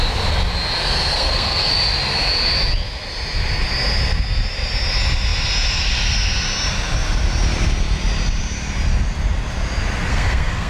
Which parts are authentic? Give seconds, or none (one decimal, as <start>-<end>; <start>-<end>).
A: 0.0-1.1; 1.7-10.1